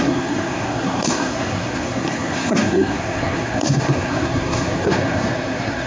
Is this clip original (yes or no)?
no